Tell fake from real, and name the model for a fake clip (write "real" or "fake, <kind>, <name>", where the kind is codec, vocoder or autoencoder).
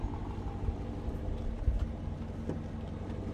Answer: real